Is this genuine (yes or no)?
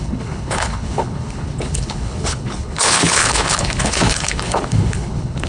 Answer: no